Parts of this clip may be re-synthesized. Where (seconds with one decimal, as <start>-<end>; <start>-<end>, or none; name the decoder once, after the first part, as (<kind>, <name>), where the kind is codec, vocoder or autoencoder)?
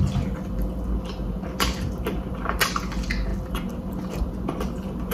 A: none